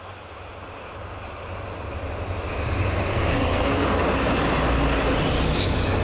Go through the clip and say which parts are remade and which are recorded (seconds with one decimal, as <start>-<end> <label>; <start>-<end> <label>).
0.0-3.1 recorded; 3.1-4.0 remade; 4.0-6.0 recorded